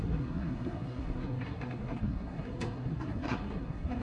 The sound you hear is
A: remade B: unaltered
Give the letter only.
A